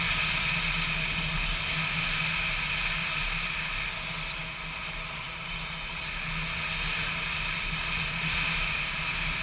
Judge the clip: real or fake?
real